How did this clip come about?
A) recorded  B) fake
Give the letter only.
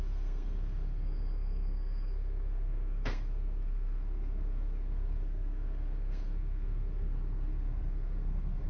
B